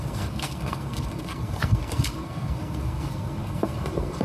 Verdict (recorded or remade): remade